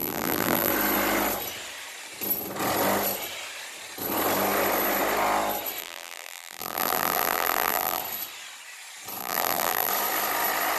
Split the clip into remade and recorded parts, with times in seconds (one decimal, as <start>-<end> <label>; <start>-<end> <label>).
0.0-0.7 remade; 0.7-5.8 recorded; 5.8-8.0 remade; 8.0-9.2 recorded; 9.2-9.9 remade; 9.9-10.8 recorded